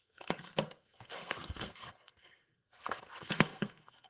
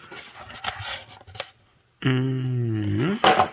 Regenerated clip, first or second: first